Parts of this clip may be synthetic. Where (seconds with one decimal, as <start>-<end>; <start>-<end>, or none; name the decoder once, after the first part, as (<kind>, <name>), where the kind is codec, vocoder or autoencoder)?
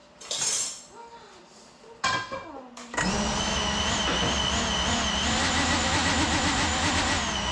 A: none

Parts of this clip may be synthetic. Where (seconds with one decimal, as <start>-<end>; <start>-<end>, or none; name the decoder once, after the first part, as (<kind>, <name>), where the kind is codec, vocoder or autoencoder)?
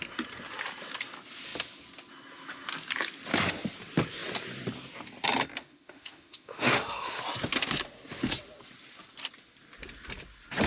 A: 5.6-7.2 (autoencoder, DAC-VAE)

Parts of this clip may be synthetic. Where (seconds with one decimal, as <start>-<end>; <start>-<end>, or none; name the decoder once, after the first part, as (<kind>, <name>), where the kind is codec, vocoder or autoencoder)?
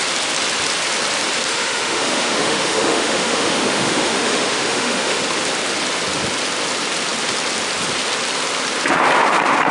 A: 1.5-5.2 (autoencoder, DAC-VAE)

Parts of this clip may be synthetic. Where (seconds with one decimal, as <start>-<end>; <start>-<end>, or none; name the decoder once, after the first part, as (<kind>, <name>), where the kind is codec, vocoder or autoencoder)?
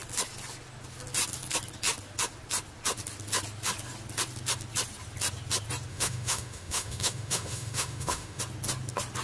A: 5.9-8.4 (autoencoder, DAC-VAE)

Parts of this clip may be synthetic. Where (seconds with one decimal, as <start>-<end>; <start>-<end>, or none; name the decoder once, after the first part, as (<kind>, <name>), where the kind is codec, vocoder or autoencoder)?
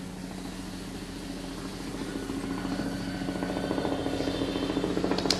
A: none